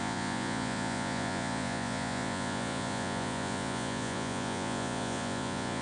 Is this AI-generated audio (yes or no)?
yes